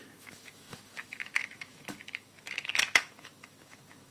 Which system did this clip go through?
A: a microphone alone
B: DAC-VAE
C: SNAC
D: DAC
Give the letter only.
B